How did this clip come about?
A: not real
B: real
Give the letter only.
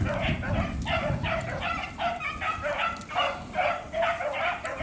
B